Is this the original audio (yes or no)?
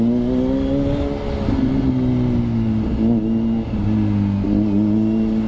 yes